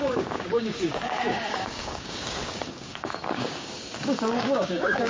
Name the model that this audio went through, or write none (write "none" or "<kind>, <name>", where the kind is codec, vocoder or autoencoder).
codec, DAC